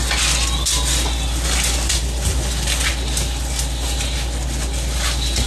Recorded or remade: recorded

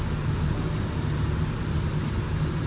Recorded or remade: recorded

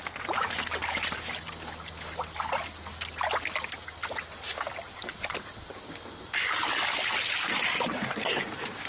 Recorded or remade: recorded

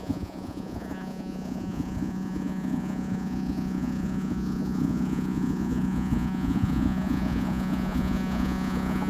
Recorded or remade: remade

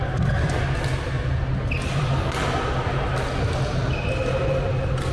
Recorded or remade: recorded